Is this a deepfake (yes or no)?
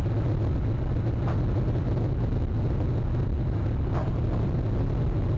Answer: no